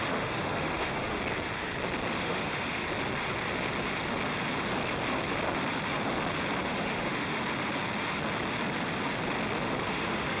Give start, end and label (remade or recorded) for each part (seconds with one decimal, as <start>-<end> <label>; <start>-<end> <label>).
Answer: 0.0-1.2 remade; 1.2-2.2 recorded; 2.2-2.8 remade; 2.8-6.6 recorded; 6.6-7.4 remade; 7.4-9.9 recorded; 9.9-10.4 remade